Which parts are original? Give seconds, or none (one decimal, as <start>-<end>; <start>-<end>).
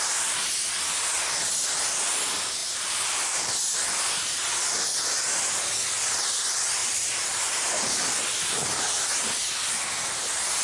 0.0-2.6; 3.5-6.8; 8.8-10.6